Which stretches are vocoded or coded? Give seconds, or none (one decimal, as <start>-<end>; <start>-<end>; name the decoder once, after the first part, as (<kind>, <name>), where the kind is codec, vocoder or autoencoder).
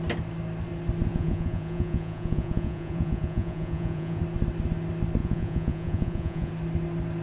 1.1-4.2 (vocoder, Vocos); 5.2-6.5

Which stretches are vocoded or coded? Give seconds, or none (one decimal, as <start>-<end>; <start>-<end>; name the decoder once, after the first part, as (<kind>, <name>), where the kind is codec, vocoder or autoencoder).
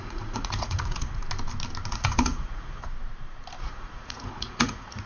0.0-1.2 (vocoder, Vocos); 1.9-2.8; 3.6-5.1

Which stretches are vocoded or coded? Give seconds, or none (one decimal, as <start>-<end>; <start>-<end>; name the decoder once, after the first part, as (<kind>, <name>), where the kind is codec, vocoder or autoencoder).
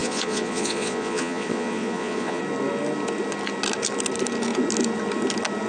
0.0-2.4 (vocoder, Vocos)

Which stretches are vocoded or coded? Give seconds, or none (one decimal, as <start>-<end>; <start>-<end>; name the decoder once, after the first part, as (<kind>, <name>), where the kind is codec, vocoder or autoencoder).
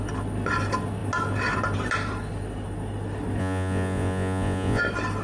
3.4-4.8 (vocoder, Vocos)